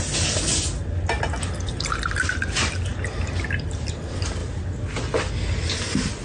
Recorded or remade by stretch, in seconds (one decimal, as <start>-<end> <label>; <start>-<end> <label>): 0.0-6.2 recorded